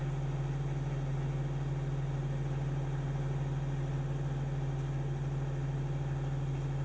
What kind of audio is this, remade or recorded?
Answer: recorded